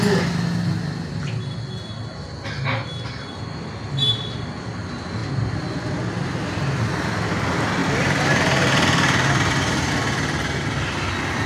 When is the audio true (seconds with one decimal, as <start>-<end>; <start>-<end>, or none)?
0.0-7.8; 9.9-11.5